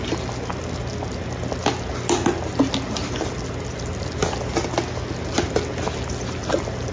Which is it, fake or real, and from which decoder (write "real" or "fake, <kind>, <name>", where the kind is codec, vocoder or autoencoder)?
real